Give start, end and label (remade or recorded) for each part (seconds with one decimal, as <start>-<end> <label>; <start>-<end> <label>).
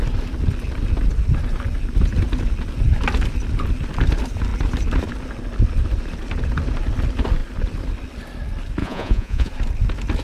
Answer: 0.0-8.8 recorded; 8.8-9.5 remade; 9.5-10.2 recorded